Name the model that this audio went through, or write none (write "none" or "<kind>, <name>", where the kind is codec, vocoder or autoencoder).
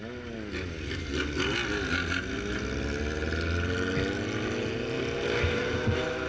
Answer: none